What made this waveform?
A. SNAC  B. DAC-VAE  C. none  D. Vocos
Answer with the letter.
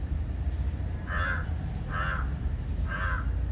C